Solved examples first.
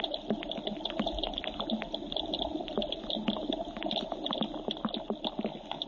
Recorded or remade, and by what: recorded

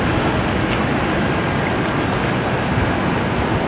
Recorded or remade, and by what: recorded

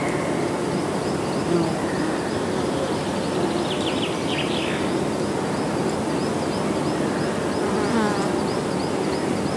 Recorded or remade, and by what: recorded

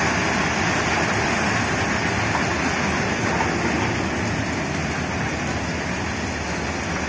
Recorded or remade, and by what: recorded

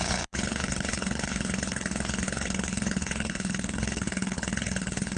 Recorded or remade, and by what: remade, codec, HILCodec